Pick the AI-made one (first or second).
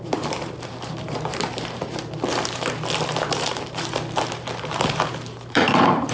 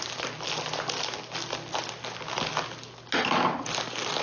first